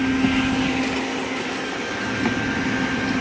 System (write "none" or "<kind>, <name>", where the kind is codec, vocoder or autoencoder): none